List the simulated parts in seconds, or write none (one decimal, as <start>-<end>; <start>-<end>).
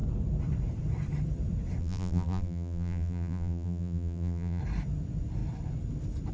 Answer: 1.8-4.6